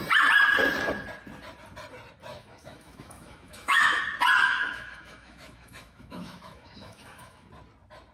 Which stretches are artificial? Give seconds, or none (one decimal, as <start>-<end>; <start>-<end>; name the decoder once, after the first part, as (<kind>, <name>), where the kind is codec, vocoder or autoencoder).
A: 2.3-4.0 (autoencoder, DAC-VAE); 4.4-7.5

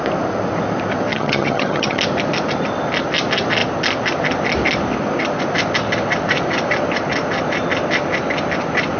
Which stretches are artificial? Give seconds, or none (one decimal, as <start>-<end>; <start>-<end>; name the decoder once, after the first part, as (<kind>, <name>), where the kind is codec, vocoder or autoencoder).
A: 1.1-2.0 (vocoder, HiFi-GAN)

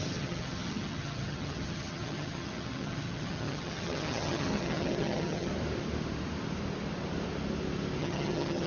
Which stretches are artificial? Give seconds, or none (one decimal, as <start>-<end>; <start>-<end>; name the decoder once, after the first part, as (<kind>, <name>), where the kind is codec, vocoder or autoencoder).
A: 0.0-5.5 (vocoder, HiFi-GAN); 8.0-8.7

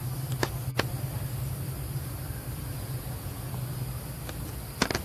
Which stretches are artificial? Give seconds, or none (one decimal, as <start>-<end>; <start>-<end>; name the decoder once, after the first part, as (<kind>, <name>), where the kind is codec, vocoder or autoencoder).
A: 2.8-3.5 (vocoder, Vocos)

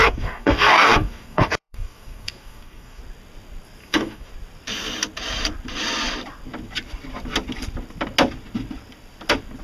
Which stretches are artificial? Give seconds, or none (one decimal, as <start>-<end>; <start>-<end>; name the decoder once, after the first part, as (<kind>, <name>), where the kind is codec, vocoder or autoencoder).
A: 0.0-3.0 (codec, DAC); 3.8-4.3